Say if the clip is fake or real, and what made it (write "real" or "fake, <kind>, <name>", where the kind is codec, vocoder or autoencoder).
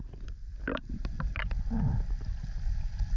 real